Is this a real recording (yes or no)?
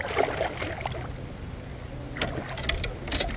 yes